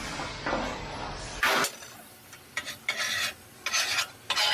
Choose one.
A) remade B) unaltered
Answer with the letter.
B